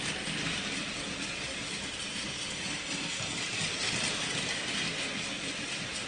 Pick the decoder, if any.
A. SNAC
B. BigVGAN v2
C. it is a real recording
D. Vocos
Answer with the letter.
C